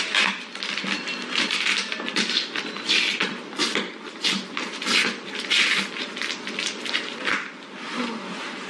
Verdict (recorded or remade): remade